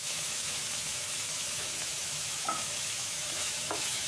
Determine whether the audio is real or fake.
fake